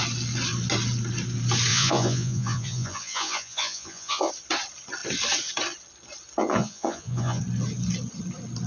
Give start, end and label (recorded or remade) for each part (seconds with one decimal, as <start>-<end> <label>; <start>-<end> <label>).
0.0-1.7 recorded; 1.7-4.3 remade; 4.3-6.4 recorded; 6.4-7.4 remade; 7.4-8.7 recorded